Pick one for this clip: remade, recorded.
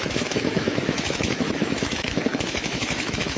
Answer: remade